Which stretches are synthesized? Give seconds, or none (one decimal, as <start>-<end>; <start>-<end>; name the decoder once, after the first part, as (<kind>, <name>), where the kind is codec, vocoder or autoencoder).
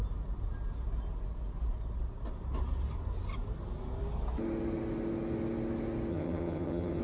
6.1-7.0 (vocoder, HiFi-GAN)